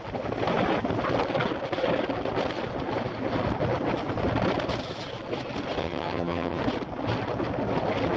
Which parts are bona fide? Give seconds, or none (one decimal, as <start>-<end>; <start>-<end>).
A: 0.0-5.8; 6.6-8.2

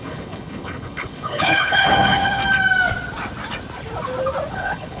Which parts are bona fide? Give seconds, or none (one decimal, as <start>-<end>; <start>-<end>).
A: 2.4-4.5

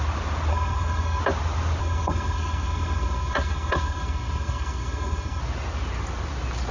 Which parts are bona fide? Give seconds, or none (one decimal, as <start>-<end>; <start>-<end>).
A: 0.0-0.5; 1.2-1.8; 5.4-6.7

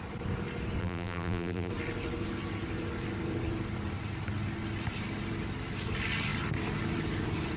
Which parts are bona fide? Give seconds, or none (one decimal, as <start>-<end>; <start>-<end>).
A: 0.0-0.8; 1.7-7.6

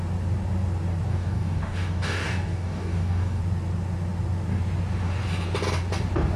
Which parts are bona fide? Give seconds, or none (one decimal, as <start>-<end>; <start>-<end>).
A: 0.0-1.1; 3.4-6.4